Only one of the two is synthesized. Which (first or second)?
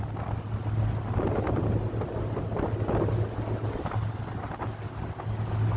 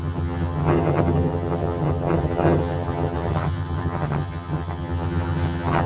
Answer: second